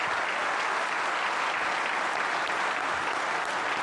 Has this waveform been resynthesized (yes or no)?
no